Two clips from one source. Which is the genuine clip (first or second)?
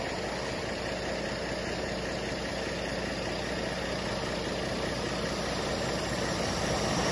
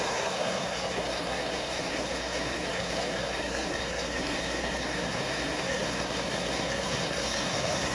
first